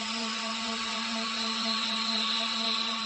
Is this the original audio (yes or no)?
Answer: no